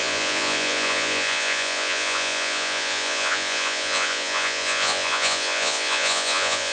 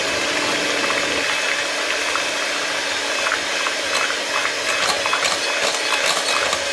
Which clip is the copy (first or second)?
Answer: first